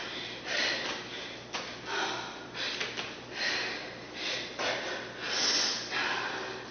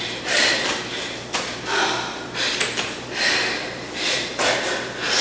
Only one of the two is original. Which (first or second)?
first